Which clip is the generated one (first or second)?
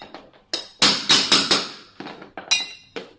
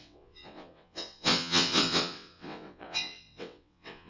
second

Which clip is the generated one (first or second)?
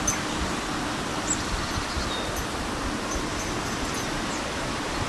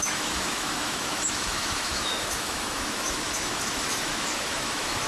second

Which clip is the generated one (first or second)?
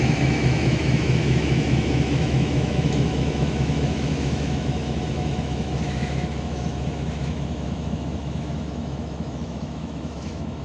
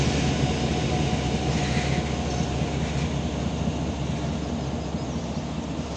first